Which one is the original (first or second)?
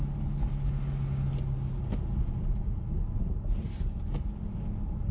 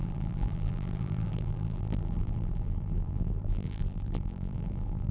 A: first